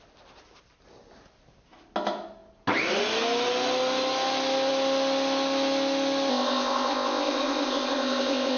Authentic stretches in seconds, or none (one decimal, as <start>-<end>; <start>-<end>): 0.0-6.3